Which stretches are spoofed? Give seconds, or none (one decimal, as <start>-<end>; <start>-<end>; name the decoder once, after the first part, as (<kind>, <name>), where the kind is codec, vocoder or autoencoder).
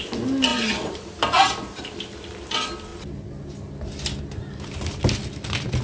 0.5-1.8 (vocoder, BigVGAN v2)